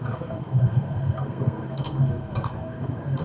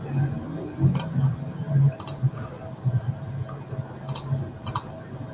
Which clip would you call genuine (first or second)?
second